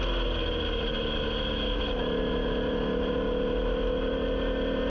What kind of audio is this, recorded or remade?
recorded